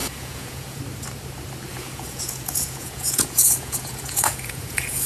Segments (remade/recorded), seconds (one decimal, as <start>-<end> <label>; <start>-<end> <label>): 0.0-0.8 remade; 0.8-1.7 recorded; 1.7-5.1 remade